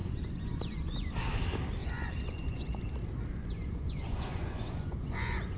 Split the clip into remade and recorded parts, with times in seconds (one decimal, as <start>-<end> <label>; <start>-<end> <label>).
0.0-1.1 remade; 1.1-1.8 recorded; 1.8-2.8 remade; 2.8-3.3 recorded; 3.3-5.6 remade